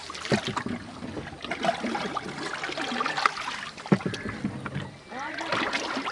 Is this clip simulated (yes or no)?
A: no